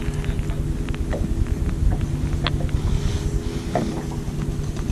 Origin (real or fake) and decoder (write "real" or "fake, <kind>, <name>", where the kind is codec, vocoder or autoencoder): real